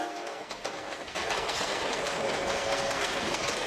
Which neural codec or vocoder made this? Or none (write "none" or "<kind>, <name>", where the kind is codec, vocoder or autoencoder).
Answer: codec, SNAC